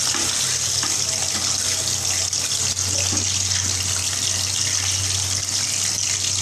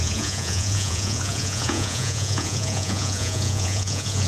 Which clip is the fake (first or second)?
second